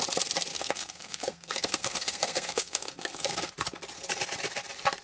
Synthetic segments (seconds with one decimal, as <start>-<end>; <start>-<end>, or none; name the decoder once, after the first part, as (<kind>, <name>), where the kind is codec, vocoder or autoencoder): 0.5-3.5 (codec, SNAC)